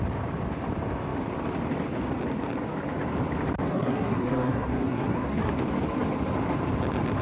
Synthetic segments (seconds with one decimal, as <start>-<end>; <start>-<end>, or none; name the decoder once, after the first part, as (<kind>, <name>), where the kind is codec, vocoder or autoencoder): 3.7-5.5 (codec, SNAC)